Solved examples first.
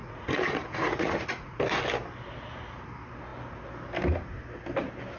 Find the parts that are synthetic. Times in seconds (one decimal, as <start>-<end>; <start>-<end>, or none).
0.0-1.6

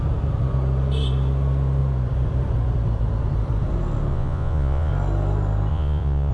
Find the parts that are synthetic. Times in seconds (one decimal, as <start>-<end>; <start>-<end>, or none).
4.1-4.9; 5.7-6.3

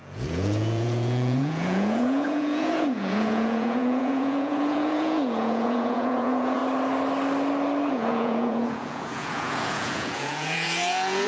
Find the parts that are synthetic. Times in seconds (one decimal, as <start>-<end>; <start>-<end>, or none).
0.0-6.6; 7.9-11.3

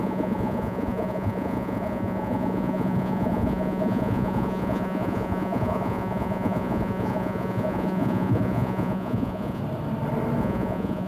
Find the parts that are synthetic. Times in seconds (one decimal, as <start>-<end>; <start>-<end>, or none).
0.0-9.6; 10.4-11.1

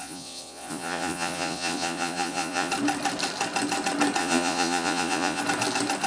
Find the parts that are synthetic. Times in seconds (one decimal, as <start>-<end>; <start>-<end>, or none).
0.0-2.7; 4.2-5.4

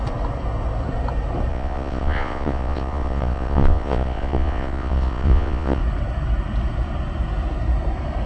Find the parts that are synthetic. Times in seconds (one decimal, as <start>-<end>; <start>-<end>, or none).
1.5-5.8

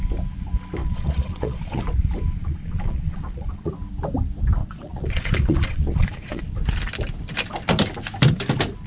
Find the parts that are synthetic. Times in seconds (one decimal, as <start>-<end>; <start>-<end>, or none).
0.8-1.8; 2.4-3.7; 4.6-6.4